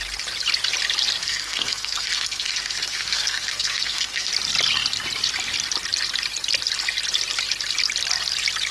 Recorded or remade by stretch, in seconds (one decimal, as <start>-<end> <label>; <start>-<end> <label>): 0.0-1.2 recorded; 1.2-4.3 remade; 4.3-8.7 recorded